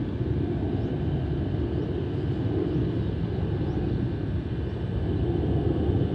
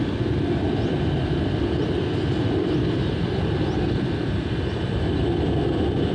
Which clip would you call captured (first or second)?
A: first